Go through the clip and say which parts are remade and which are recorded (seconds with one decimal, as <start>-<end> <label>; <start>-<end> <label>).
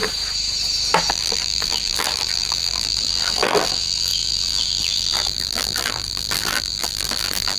0.0-1.1 recorded; 1.1-7.6 remade